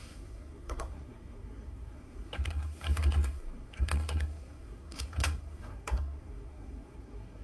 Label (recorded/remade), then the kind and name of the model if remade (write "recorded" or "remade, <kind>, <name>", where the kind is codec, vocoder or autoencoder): remade, codec, SNAC